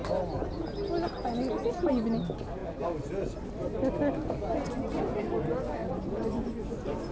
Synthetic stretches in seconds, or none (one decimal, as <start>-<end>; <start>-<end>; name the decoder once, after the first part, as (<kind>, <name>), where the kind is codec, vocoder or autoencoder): 2.6-4.4 (vocoder, BigVGAN v2); 5.8-6.5